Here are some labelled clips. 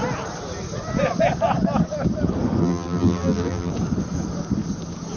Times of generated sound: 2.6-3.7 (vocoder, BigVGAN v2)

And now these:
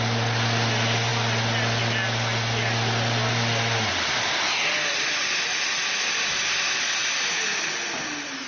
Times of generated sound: none

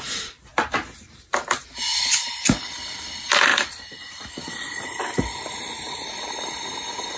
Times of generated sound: 0.0-0.5 (vocoder, BigVGAN v2); 1.4-1.9; 2.6-7.2

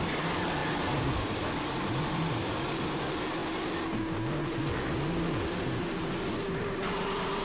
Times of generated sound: 0.0-0.6 (vocoder, BigVGAN v2); 1.3-3.4

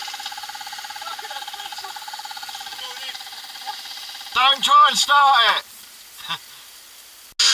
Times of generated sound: 1.7-6.0 (vocoder, BigVGAN v2)

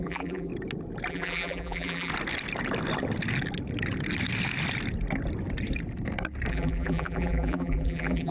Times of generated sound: 0.0-0.5 (vocoder, BigVGAN v2); 1.1-2.1; 6.5-8.3

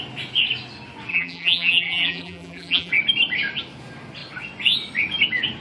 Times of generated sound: 1.1-2.9 (vocoder, BigVGAN v2)